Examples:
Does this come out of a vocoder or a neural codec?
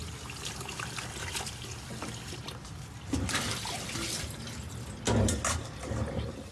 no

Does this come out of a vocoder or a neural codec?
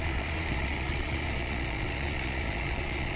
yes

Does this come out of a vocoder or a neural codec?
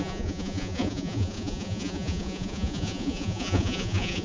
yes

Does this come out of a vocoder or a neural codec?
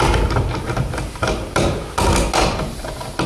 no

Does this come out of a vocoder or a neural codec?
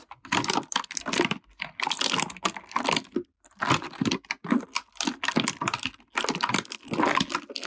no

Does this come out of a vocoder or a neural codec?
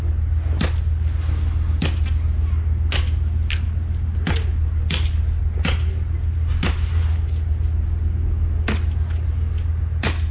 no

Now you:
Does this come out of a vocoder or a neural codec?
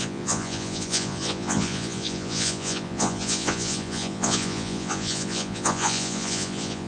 yes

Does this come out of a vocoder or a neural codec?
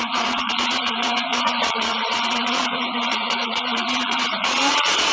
yes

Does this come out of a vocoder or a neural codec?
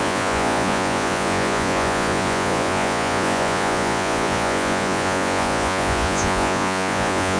yes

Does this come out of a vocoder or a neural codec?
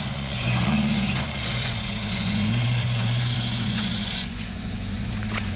yes